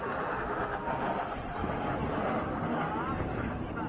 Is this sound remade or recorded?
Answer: recorded